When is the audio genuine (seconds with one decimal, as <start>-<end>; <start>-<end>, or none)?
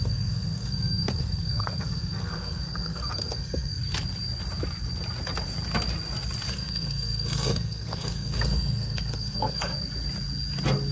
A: 3.7-6.5; 9.7-10.9